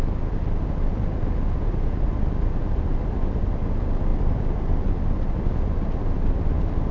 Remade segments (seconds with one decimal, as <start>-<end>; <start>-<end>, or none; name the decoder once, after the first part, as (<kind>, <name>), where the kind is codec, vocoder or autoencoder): none